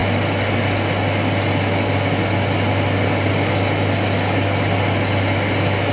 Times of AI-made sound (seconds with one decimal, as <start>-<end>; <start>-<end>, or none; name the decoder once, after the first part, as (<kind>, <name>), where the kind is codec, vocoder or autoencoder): none